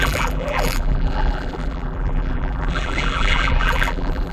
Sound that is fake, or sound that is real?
fake